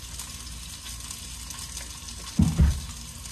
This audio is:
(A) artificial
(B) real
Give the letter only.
B